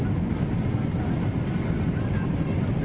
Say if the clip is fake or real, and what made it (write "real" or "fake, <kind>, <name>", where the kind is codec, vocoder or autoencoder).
real